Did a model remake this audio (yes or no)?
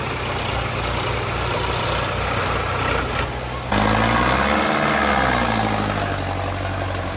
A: no